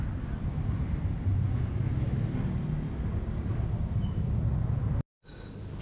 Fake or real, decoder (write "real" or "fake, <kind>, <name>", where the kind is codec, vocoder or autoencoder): real